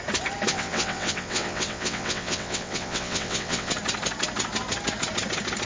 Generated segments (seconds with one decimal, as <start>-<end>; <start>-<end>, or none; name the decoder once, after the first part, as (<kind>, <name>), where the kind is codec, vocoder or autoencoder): 0.5-3.7 (vocoder, WaveNeXt)